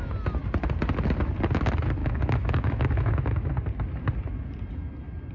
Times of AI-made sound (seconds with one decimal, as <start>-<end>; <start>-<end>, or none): 2.0-3.5